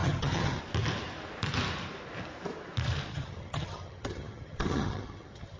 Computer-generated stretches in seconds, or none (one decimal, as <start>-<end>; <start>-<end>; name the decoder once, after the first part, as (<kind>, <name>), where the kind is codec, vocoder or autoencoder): 0.0-0.6 (vocoder, HiFi-GAN); 3.1-5.6